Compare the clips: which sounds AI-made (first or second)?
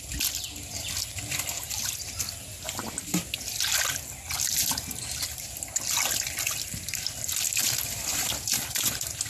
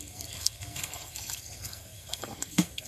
second